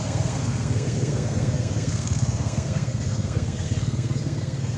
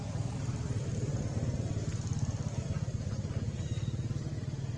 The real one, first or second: second